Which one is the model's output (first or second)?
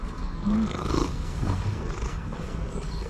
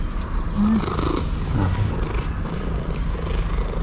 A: first